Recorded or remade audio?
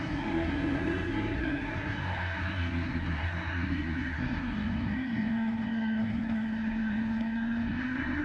remade